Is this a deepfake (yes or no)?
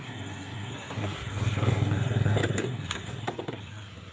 yes